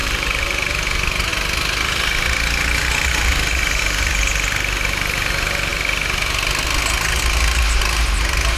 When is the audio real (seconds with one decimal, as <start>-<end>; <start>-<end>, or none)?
0.7-8.6